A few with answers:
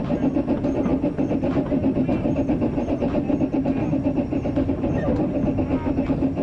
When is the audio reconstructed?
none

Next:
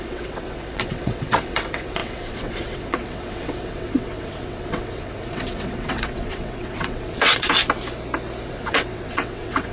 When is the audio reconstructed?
0.0-7.6 (vocoder, WaveNeXt); 8.5-9.7

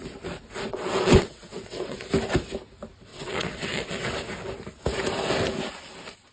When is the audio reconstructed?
0.7-2.1 (vocoder, WaveNeXt); 3.1-4.1

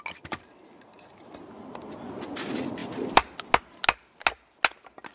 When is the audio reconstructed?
none